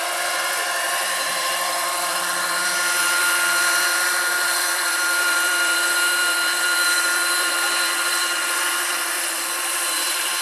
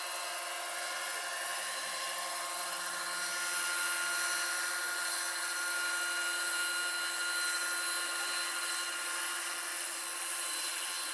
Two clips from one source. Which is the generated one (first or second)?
first